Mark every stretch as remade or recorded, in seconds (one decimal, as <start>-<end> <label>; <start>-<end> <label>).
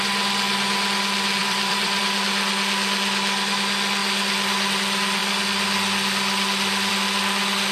0.0-1.4 recorded; 1.4-2.0 remade; 2.0-7.7 recorded